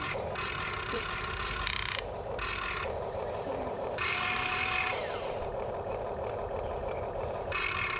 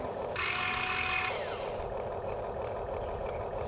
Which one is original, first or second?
second